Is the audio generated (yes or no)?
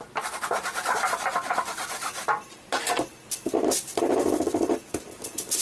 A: no